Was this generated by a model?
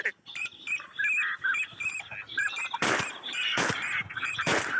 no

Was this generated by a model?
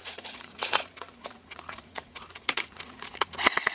yes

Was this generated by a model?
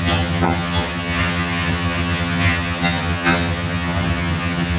yes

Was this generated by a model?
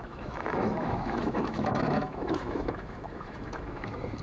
yes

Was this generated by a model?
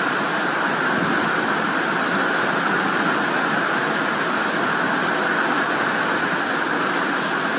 no